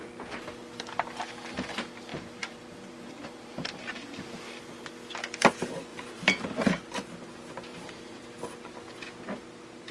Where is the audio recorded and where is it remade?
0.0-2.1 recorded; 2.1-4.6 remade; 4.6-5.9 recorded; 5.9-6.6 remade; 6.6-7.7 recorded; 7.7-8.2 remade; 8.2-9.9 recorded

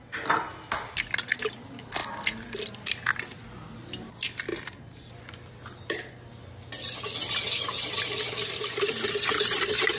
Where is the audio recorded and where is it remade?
0.0-10.0 recorded

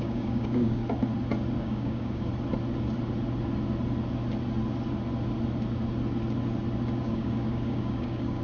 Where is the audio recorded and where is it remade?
0.0-0.8 remade; 0.8-1.6 recorded; 1.6-2.3 remade; 2.3-7.0 recorded; 7.0-8.4 remade

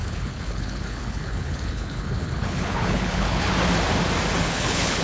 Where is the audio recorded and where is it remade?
0.0-3.5 remade; 3.5-4.4 recorded; 4.4-5.0 remade